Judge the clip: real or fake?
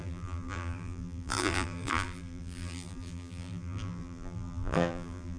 fake